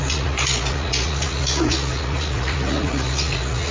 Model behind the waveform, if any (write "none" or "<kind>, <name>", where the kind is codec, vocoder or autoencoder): vocoder, Vocos